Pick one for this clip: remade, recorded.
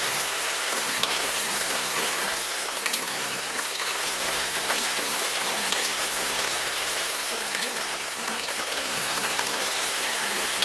remade